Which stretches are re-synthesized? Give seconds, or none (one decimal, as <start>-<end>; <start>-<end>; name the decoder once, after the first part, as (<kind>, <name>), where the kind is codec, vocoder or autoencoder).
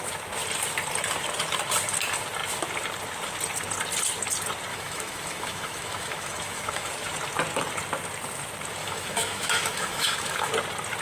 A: 4.7-6.9 (autoencoder, DAC-VAE); 8.8-10.5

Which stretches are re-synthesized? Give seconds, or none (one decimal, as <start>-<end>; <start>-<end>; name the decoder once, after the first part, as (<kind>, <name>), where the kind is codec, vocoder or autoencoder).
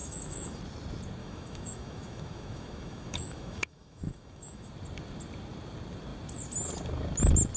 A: 0.0-0.6 (autoencoder, DAC-VAE); 1.2-4.7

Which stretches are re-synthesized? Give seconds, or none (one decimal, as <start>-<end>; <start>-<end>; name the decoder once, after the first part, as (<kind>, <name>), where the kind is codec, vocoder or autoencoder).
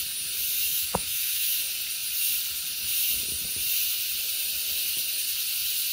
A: 0.7-1.5 (autoencoder, DAC-VAE)